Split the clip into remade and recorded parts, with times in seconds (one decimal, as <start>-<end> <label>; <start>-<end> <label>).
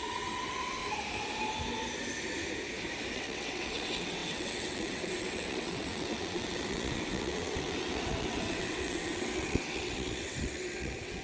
0.0-0.8 remade; 0.8-3.1 recorded; 3.1-11.2 remade